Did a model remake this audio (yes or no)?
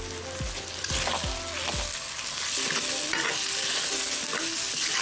no